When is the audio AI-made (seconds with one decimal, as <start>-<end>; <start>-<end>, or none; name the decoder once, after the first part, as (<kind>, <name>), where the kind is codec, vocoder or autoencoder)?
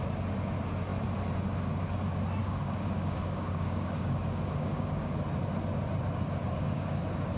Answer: 2.4-5.1 (codec, DAC); 6.4-7.0